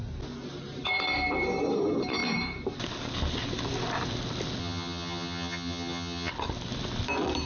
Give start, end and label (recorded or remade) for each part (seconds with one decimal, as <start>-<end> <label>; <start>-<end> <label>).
0.0-4.6 recorded; 4.6-6.3 remade; 6.3-7.5 recorded